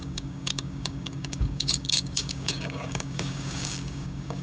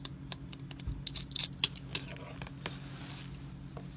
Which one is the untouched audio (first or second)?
second